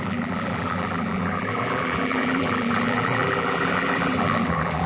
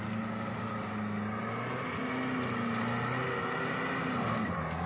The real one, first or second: second